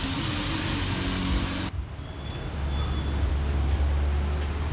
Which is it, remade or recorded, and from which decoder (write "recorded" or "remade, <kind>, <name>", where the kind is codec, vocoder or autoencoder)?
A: recorded